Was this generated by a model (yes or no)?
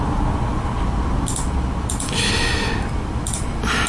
no